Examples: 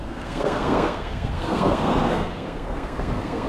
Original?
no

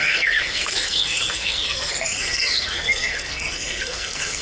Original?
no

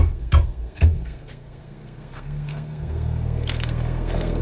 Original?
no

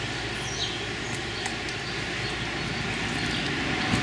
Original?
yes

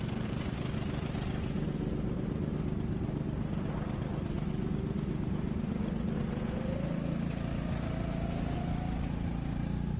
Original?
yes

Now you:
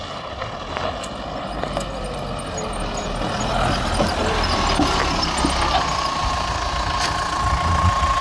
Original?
yes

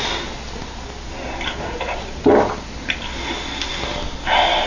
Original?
yes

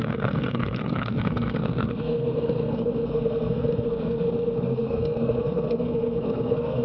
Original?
no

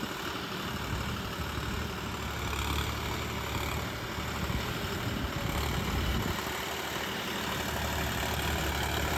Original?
yes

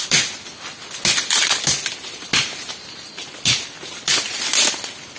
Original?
yes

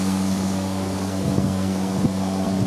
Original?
no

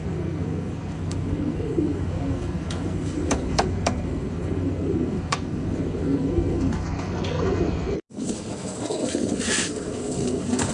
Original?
no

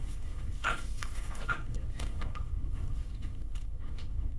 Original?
no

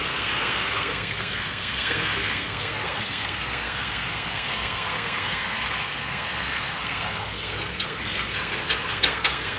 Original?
no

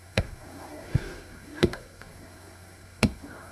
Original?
no